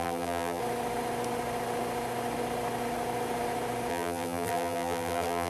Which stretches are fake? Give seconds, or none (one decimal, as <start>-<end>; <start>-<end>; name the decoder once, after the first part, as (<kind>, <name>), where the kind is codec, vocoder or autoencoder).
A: 0.0-0.6 (vocoder, BigVGAN v2); 3.9-5.5